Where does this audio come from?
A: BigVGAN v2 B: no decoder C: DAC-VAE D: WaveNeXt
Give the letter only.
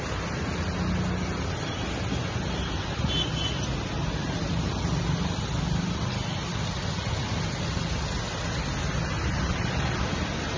B